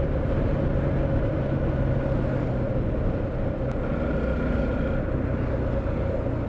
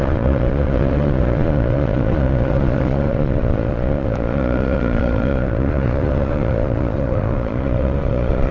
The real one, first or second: first